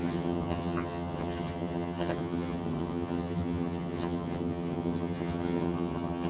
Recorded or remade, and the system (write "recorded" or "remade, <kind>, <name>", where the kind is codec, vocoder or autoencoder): remade, vocoder, HiFi-GAN